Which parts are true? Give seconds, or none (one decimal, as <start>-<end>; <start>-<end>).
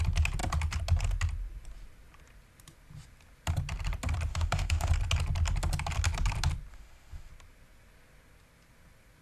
0.0-4.3; 4.9-6.7; 7.3-9.2